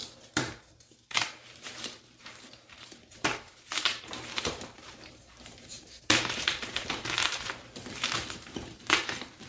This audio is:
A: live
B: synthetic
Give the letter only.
B